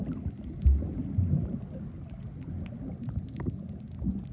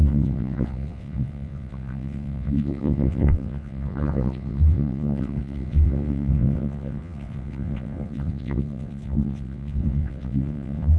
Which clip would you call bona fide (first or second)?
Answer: first